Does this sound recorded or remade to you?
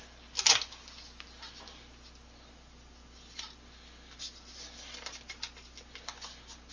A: recorded